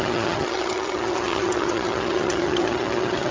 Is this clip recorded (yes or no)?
no